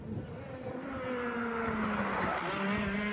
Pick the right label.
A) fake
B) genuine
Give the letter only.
B